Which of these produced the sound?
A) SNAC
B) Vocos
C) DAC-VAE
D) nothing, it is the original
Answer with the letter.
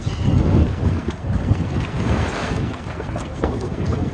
A